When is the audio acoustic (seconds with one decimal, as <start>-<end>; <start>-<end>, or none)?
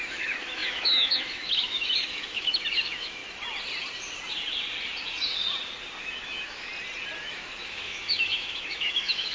3.2-6.0; 6.7-7.2